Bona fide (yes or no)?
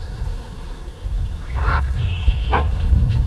no